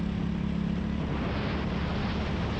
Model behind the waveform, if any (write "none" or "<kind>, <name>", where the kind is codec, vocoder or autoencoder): none